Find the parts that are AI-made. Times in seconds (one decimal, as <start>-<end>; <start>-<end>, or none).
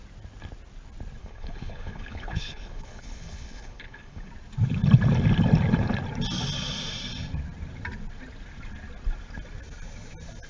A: 1.2-4.3